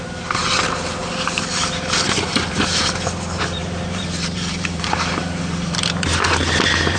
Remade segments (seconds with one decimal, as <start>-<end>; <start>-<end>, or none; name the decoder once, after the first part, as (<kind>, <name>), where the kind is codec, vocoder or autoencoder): 0.0-0.4 (vocoder, BigVGAN v2); 1.4-7.0